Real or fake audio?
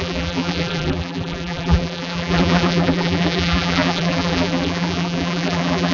fake